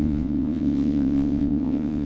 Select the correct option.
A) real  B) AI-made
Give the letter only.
B